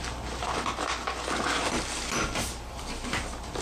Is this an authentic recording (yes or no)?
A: yes